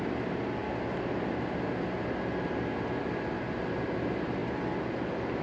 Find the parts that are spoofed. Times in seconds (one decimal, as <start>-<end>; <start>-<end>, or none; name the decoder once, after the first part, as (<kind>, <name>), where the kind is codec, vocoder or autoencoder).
none